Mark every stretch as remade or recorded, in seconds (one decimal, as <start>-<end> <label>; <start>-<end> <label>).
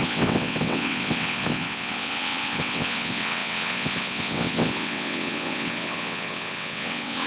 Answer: 0.0-7.3 remade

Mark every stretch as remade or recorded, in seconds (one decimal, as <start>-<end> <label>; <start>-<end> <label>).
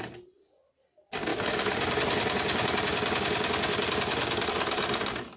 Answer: 0.0-5.4 recorded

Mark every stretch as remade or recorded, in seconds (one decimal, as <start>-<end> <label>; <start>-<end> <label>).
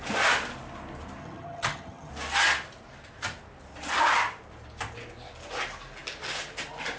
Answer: 0.0-1.2 recorded; 1.2-2.1 remade; 2.1-7.0 recorded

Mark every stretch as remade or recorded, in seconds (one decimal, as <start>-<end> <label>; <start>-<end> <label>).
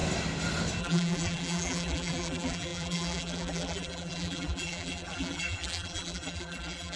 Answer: 0.0-0.8 recorded; 0.8-7.0 remade